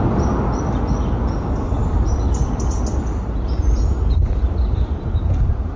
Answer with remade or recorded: recorded